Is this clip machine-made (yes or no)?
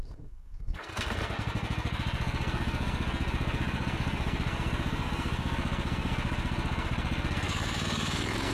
yes